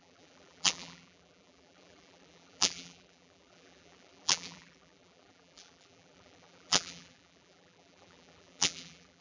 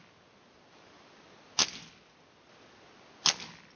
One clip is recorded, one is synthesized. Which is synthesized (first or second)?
first